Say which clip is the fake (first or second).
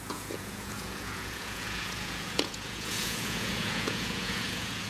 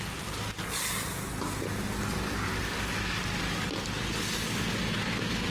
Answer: first